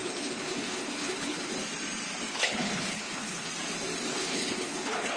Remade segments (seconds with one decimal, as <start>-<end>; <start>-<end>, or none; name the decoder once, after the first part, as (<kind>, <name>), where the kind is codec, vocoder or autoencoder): 0.0-1.5 (codec, HILCodec); 2.3-3.5; 4.1-5.2